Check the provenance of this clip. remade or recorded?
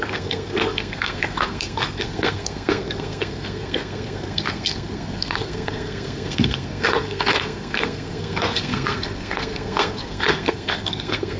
remade